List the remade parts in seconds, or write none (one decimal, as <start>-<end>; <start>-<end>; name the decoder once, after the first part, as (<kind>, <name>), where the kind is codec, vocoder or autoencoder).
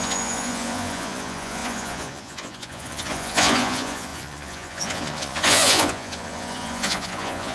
0.0-7.5 (vocoder, Vocos)